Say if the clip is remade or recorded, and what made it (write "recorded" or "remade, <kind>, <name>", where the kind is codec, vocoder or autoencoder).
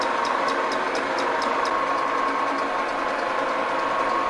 recorded